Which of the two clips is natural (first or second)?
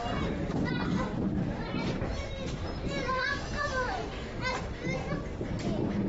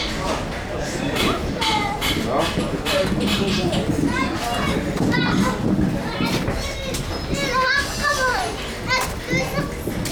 second